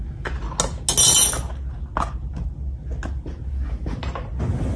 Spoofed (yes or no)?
no